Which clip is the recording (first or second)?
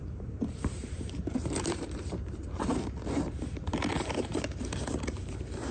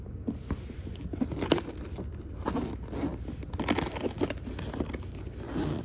second